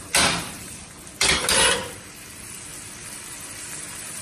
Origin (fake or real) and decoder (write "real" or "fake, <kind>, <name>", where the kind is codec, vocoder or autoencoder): real